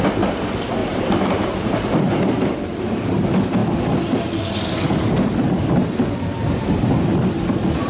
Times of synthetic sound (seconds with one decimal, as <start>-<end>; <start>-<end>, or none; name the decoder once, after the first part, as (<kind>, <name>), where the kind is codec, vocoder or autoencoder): 0.8-3.1 (vocoder, BigVGAN v2)